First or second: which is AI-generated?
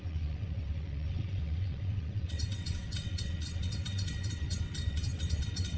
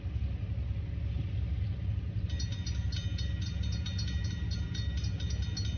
first